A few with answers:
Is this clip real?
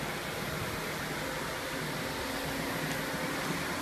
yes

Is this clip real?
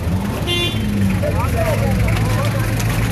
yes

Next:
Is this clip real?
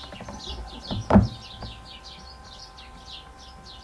yes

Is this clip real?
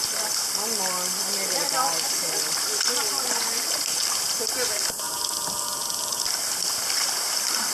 yes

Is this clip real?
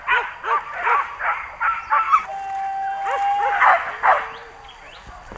yes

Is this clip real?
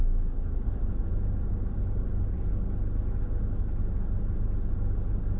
yes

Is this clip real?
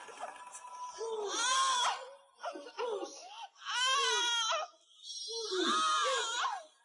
yes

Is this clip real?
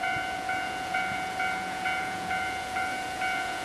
no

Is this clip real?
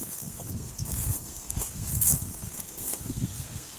no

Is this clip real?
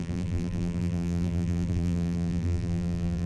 no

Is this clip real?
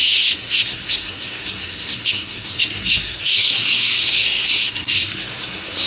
no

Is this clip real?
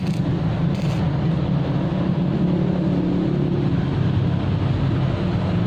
yes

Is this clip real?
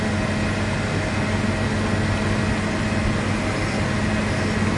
yes